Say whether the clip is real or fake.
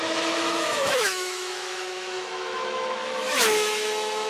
fake